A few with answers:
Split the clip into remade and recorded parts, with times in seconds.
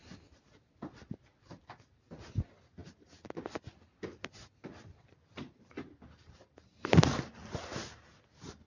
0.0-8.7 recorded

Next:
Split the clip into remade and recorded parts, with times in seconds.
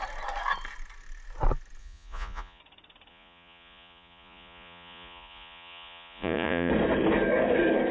0.0-1.8 recorded; 1.8-2.6 remade; 2.6-3.1 recorded; 3.1-6.7 remade; 6.7-7.9 recorded